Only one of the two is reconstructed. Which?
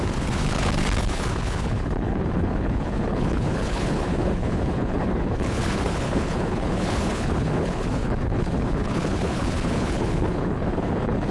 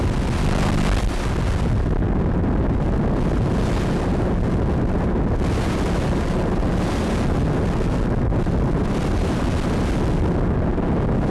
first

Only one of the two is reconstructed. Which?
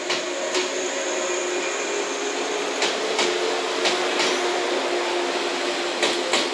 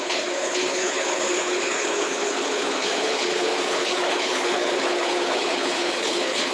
second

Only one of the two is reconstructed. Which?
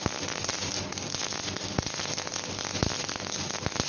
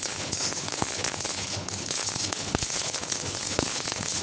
second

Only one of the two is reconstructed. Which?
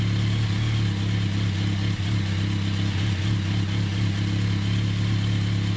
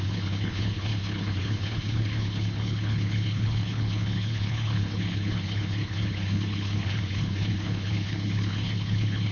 second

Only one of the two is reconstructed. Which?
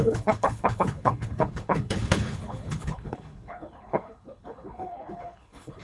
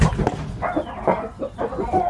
first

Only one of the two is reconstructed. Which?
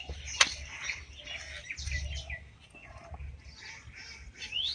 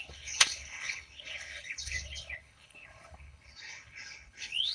second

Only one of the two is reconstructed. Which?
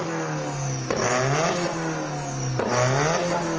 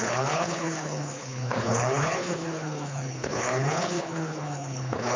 second